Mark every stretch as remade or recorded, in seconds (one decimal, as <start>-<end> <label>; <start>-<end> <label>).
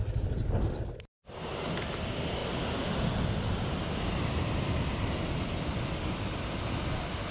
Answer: 0.0-7.3 recorded